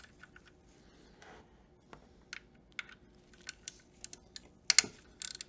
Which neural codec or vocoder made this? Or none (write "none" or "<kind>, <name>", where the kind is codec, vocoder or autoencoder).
none